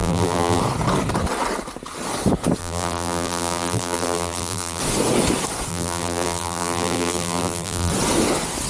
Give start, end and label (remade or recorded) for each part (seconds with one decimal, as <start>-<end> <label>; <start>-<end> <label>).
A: 0.0-0.6 remade; 0.6-2.6 recorded; 2.6-4.8 remade; 4.8-5.7 recorded; 5.7-7.9 remade; 7.9-8.7 recorded